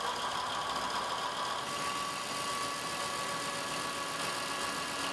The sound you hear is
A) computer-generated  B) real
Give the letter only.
B